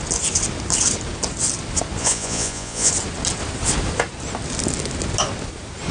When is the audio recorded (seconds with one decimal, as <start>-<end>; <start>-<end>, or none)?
0.0-2.0; 2.9-5.9

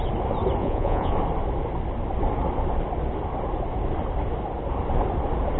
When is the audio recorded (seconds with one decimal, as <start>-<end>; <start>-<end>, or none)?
0.0-0.6; 1.1-5.6